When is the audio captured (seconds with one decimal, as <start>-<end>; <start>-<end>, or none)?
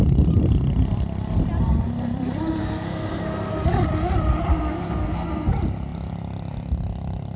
0.0-2.6; 3.5-4.5; 5.5-7.4